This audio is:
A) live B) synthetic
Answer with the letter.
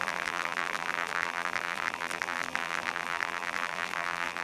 B